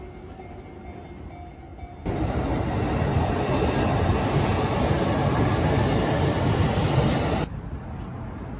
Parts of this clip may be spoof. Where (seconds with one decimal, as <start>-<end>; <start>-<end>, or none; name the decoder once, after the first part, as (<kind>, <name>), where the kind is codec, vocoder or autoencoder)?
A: none